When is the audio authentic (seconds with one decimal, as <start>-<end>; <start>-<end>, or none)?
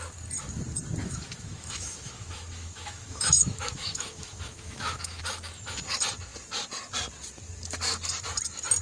0.0-1.0; 5.2-8.8